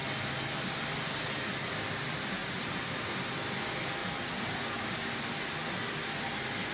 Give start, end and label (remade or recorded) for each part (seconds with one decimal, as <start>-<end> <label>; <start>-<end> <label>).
0.0-2.4 recorded; 2.4-3.1 remade; 3.1-4.0 recorded; 4.0-5.3 remade; 5.3-6.7 recorded